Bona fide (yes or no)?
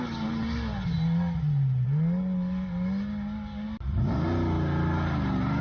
yes